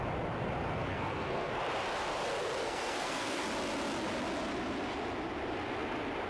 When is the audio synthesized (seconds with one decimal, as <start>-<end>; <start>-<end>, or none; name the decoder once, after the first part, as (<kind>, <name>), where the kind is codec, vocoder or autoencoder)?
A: 0.9-1.5 (codec, SNAC); 2.6-3.4